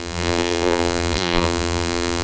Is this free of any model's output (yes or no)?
no